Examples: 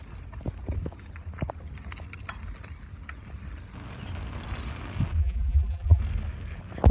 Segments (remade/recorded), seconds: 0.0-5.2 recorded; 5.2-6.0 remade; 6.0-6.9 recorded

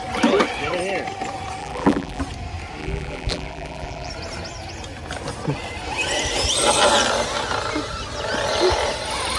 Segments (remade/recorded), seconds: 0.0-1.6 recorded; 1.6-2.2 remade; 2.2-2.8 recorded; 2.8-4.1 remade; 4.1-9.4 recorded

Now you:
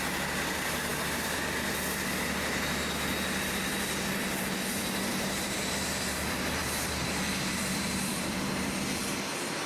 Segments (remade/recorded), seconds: 0.0-0.9 recorded; 0.9-2.5 remade; 2.5-5.1 recorded; 5.1-8.4 remade; 8.4-9.7 recorded